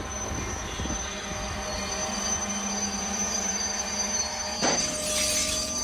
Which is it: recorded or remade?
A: recorded